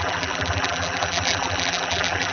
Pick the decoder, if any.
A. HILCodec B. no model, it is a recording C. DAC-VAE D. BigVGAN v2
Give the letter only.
D